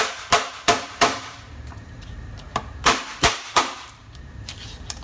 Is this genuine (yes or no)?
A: no